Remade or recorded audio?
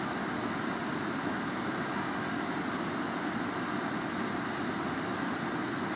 recorded